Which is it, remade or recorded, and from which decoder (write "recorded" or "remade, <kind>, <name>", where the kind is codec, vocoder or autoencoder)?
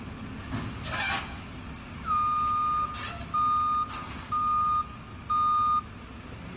recorded